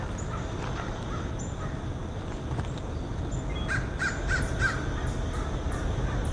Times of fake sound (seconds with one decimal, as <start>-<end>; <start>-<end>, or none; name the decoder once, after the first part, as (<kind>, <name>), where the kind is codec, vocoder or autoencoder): none